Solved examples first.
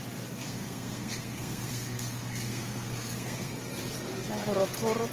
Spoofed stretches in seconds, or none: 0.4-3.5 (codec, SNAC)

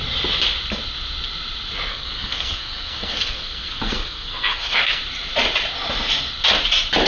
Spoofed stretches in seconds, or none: 1.9-5.0 (codec, SNAC)

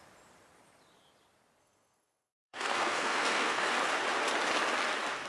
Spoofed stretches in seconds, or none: 1.6-3.7 (codec, SNAC)

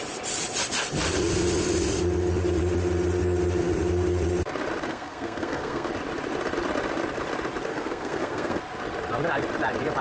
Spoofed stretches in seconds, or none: 4.9-5.9 (codec, SNAC); 7.7-8.6

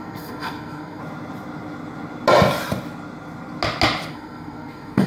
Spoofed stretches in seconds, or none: 0.0-1.0 (codec, SNAC); 4.1-5.1

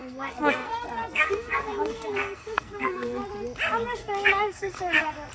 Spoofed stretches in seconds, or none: 0.0-3.2 (codec, SNAC); 3.8-5.3